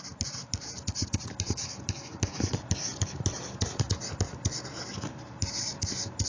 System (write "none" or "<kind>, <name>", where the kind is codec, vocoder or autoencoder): none